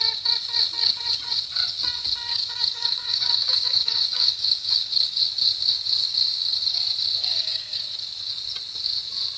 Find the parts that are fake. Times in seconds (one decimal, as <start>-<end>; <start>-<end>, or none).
2.3-5.2; 6.0-6.8; 7.2-7.8